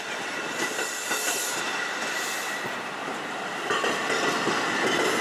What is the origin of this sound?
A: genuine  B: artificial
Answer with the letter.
A